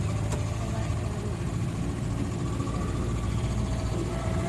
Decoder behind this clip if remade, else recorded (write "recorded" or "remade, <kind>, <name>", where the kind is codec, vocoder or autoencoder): recorded